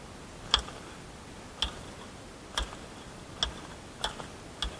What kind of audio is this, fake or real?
real